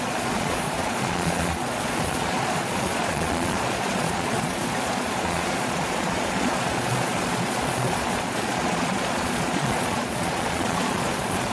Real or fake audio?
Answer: fake